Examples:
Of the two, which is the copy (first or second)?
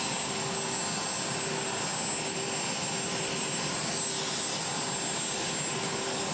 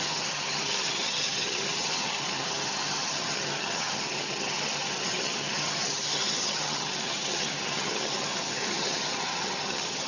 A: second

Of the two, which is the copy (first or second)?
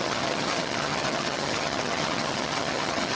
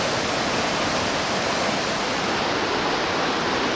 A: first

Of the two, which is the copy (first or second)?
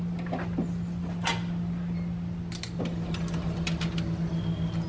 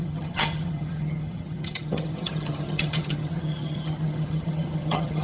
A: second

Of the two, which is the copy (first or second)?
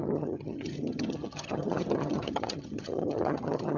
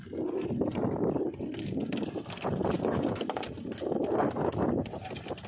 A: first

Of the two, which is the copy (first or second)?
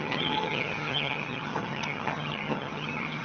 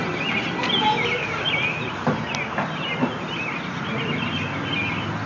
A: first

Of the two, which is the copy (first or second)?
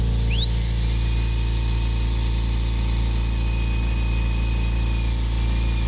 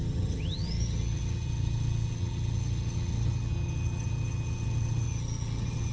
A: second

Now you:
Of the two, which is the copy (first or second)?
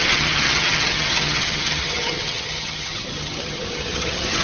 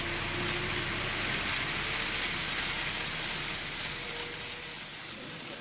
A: first